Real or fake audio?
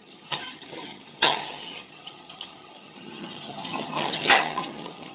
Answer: fake